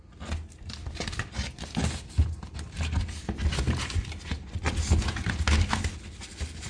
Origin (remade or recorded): recorded